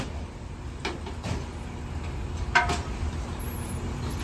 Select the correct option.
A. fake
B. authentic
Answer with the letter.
B